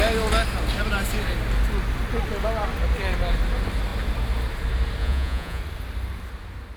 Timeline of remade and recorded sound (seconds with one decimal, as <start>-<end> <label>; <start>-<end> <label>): 0.0-5.0 recorded; 5.0-5.6 remade; 5.6-6.8 recorded